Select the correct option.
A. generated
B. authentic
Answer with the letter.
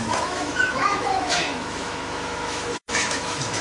A